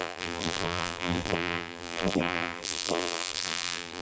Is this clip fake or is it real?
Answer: fake